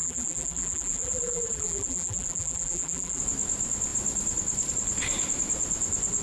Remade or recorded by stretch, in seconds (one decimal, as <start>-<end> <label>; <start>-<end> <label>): 0.0-3.2 remade; 3.2-6.2 recorded